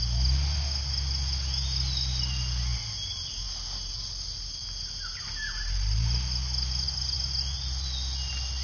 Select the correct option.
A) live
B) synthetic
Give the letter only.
A